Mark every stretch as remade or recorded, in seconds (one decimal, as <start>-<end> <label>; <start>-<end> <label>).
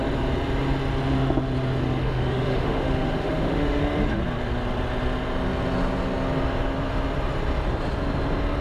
0.0-2.0 recorded; 2.0-3.8 remade; 3.8-8.6 recorded